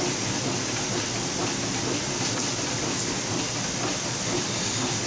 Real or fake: fake